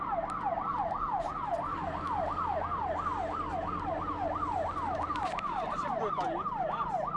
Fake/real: real